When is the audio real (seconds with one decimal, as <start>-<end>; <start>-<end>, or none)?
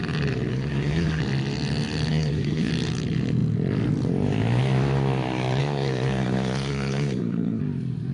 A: 0.0-0.5; 1.2-2.1; 2.7-5.6; 7.6-8.1